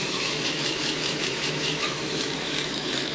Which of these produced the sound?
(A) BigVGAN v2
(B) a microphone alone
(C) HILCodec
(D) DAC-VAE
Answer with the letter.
D